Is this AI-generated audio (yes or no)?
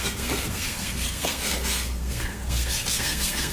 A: yes